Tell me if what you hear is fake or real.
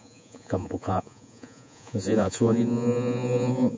fake